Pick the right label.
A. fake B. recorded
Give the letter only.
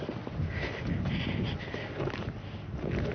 B